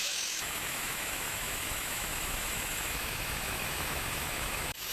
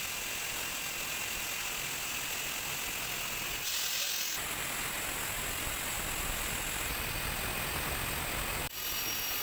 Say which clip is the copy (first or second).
first